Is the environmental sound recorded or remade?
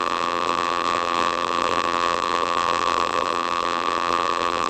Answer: remade